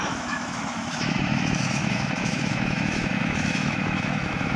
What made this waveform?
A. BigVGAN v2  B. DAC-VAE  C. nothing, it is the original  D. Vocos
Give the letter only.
B